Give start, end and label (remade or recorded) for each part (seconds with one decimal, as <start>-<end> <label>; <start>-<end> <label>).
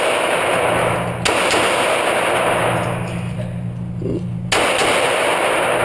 0.0-5.8 recorded